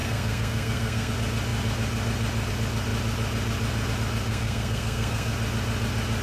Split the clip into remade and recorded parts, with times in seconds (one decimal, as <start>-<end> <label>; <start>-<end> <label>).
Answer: 0.0-1.1 remade; 1.1-4.3 recorded; 4.3-5.3 remade; 5.3-6.2 recorded

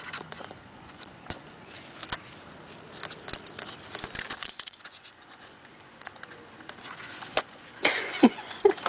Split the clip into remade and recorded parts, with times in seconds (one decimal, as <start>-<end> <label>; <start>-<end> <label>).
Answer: 0.0-2.0 remade; 2.0-4.3 recorded; 4.3-8.9 remade

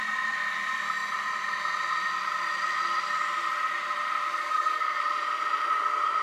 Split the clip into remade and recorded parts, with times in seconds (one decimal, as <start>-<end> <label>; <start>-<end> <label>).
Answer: 0.0-4.4 recorded; 4.4-5.0 remade; 5.0-6.2 recorded

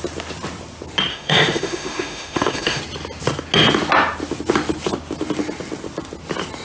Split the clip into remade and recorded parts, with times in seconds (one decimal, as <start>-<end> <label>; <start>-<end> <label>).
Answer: 0.0-1.1 recorded; 1.1-2.8 remade; 2.8-6.6 recorded

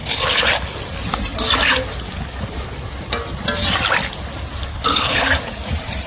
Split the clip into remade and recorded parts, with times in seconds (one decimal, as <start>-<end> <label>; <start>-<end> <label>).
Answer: 0.0-0.5 remade; 0.5-4.7 recorded; 4.7-5.2 remade; 5.2-6.1 recorded

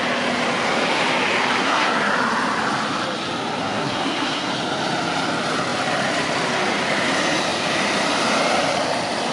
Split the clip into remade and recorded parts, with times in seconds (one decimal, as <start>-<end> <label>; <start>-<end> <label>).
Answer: 0.0-1.6 recorded; 1.6-2.1 remade; 2.1-3.6 recorded; 3.6-4.5 remade; 4.5-9.3 recorded

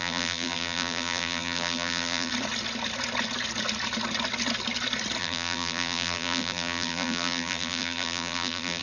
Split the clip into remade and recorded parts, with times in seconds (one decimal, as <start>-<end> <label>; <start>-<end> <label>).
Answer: 0.0-2.3 remade; 2.3-5.2 recorded; 5.2-8.8 remade

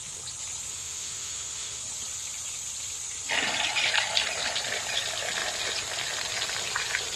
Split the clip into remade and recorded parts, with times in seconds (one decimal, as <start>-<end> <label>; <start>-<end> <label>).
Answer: 0.0-0.7 recorded; 0.7-1.8 remade; 1.8-7.2 recorded